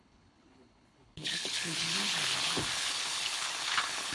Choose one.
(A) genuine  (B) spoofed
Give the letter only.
B